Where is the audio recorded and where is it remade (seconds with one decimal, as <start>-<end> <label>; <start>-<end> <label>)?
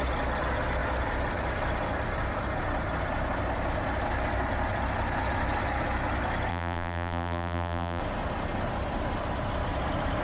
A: 0.0-6.5 recorded; 6.5-8.0 remade; 8.0-10.2 recorded